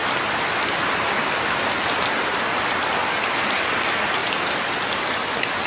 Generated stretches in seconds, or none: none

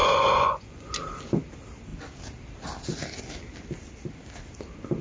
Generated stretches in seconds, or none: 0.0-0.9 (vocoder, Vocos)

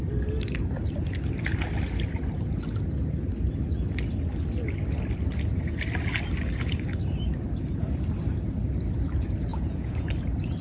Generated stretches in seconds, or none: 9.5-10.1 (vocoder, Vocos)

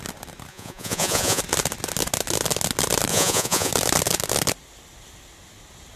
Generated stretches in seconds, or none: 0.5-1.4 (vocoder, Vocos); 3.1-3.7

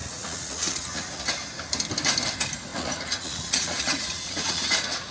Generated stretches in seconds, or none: 0.0-1.3 (vocoder, Vocos); 2.7-5.1